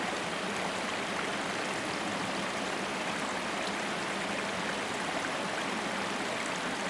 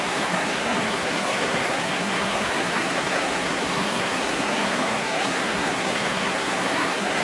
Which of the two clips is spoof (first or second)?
second